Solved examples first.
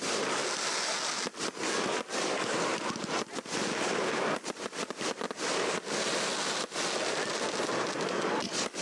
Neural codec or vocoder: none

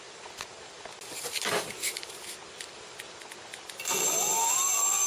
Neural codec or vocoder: none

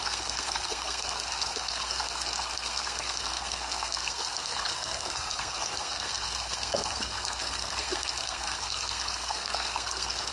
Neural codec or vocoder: codec, SNAC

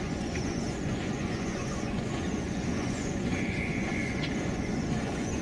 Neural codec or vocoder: vocoder, Vocos